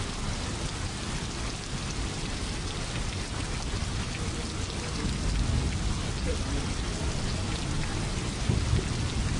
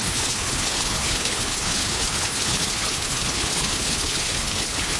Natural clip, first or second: first